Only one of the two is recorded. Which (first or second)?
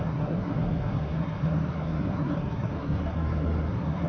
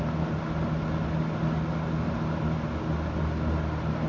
second